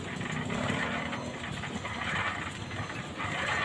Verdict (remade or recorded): recorded